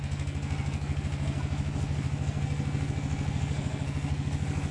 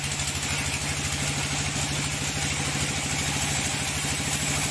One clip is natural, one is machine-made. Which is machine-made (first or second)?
first